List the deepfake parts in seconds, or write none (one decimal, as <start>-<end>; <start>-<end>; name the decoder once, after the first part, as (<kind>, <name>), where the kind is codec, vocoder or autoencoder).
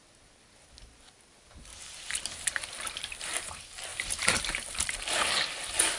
1.7-2.2 (vocoder, BigVGAN v2); 3.9-5.3